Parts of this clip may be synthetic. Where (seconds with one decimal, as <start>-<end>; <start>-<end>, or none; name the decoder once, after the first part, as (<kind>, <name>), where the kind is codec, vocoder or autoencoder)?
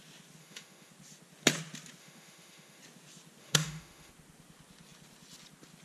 0.4-0.9 (autoencoder, DAC-VAE); 2.0-2.8; 3.4-4.1